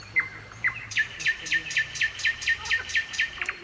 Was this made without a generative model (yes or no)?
no